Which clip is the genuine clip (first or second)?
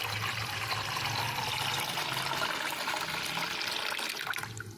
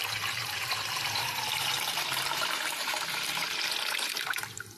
first